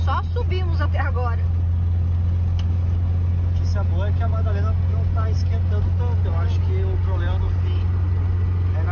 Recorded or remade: recorded